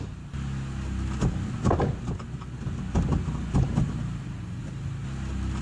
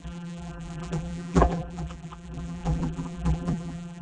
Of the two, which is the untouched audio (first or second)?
first